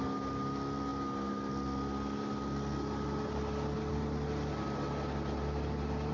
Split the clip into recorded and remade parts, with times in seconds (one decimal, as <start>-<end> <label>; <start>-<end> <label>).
0.0-6.1 recorded